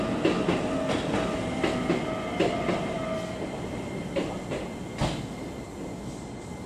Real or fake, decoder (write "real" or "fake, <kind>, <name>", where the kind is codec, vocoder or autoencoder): real